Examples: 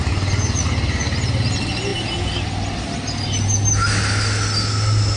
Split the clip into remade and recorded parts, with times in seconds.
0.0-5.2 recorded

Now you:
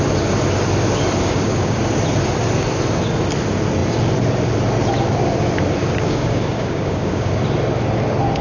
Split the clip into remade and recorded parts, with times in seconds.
0.0-1.2 recorded; 1.2-1.8 remade; 1.8-5.8 recorded; 5.8-7.4 remade; 7.4-8.4 recorded

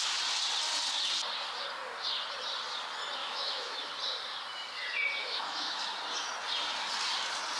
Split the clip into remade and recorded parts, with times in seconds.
0.0-3.2 recorded; 3.2-3.9 remade; 3.9-5.2 recorded; 5.2-5.8 remade; 5.8-7.6 recorded

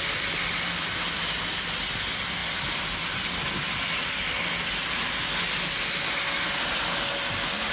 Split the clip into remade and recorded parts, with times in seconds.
0.0-7.7 recorded

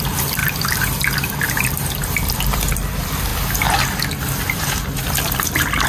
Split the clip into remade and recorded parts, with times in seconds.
0.0-3.3 remade; 3.3-5.2 recorded; 5.2-5.9 remade

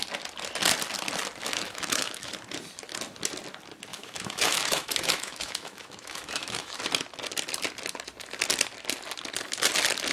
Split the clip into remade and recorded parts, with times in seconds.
0.0-1.4 recorded; 1.4-2.3 remade; 2.3-3.9 recorded; 3.9-6.8 remade; 6.8-10.1 recorded